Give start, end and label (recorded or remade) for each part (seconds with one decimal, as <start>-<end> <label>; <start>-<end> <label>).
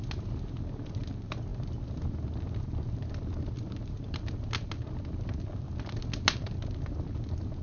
0.0-7.6 recorded